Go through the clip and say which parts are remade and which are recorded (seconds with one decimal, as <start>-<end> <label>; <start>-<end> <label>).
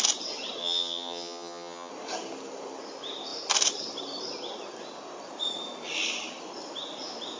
0.0-0.6 recorded; 0.6-1.9 remade; 1.9-7.4 recorded